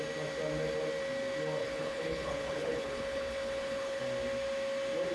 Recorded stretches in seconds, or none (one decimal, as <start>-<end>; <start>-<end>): 0.0-1.6; 4.0-5.1